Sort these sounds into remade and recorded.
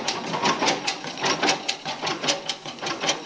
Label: remade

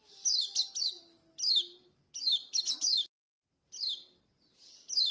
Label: recorded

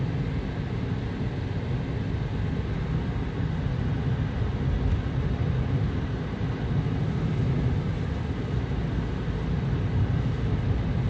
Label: recorded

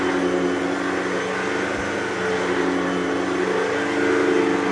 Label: recorded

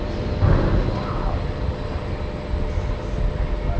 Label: recorded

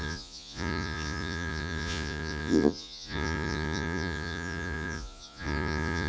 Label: remade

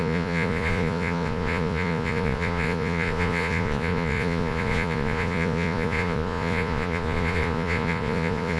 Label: remade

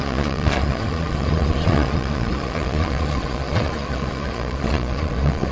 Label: remade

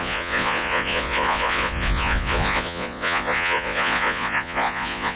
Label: remade